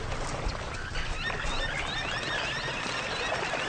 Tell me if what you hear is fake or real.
real